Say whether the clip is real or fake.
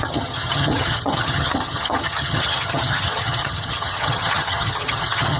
fake